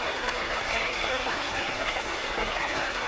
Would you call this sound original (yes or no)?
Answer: no